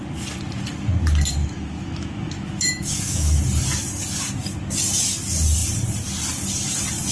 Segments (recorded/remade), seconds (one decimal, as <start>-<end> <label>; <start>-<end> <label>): 0.0-1.4 recorded; 1.4-3.4 remade; 3.4-7.1 recorded